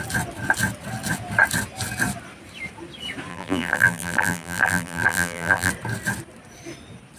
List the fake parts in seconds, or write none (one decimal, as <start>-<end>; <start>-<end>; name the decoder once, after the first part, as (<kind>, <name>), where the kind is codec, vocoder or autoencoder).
3.3-5.7 (vocoder, BigVGAN v2)